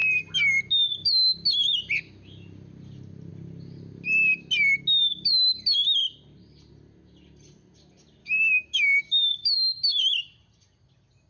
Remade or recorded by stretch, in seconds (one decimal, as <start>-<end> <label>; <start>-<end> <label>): 0.0-8.2 recorded; 8.2-9.3 remade; 9.3-11.3 recorded